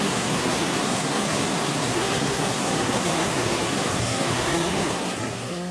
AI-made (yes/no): yes